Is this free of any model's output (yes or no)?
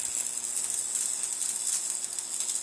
yes